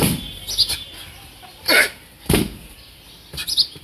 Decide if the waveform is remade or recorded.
recorded